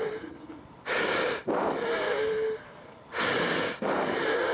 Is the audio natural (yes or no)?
yes